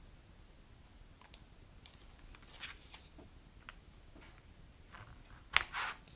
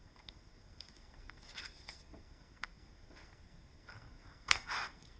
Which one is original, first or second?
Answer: first